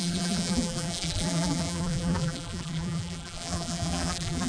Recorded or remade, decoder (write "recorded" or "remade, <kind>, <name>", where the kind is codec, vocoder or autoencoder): remade, vocoder, BigVGAN v2